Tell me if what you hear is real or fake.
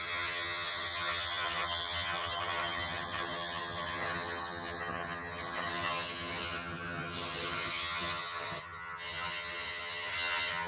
fake